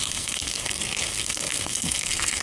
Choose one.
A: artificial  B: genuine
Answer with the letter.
A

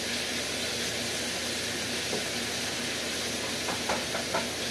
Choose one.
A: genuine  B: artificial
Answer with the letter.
A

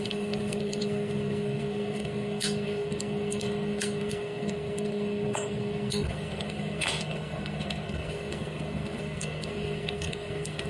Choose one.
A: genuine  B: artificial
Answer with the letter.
B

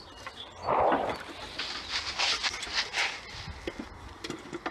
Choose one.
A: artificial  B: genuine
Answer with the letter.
B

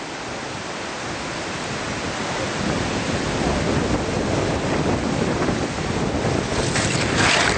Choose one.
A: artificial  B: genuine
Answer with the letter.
B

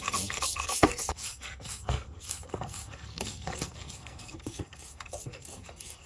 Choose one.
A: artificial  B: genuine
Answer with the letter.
A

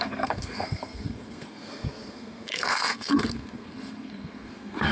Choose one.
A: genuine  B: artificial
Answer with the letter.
B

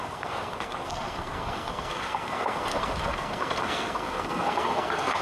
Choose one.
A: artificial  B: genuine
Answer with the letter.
A